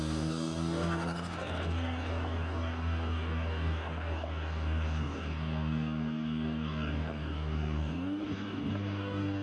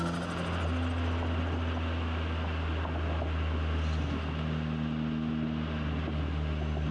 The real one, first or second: second